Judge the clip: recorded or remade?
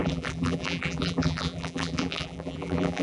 remade